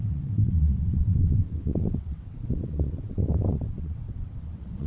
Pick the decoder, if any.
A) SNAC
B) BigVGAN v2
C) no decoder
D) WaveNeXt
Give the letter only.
D